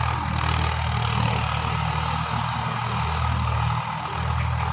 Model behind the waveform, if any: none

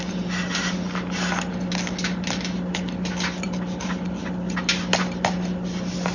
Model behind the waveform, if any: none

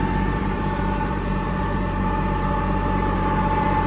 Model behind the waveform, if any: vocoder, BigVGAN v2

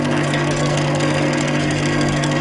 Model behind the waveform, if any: codec, SNAC